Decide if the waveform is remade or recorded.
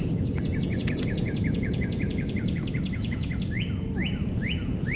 remade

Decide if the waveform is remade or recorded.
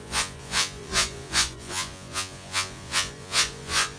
remade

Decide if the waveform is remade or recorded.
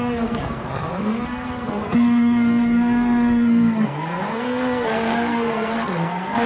remade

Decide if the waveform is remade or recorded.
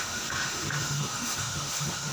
remade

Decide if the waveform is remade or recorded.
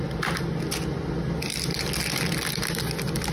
recorded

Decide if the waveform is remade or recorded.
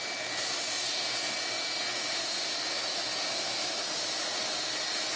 recorded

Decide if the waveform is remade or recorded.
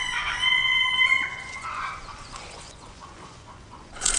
remade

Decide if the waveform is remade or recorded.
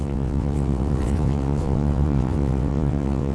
remade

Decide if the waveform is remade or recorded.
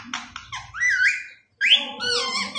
recorded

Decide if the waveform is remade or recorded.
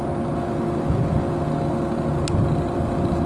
recorded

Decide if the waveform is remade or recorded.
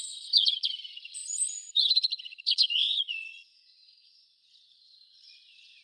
remade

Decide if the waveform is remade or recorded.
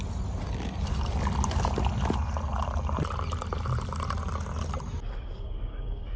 recorded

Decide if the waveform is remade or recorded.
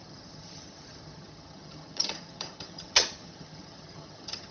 remade